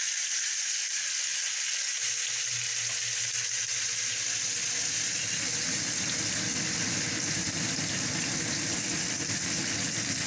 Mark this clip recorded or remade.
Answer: recorded